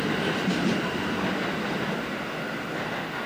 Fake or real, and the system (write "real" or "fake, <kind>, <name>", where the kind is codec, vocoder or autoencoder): real